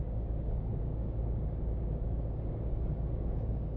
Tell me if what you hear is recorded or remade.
remade